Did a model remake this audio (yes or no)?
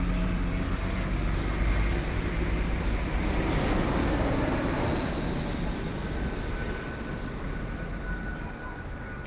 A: no